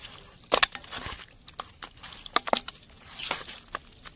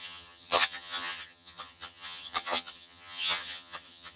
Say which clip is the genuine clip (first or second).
first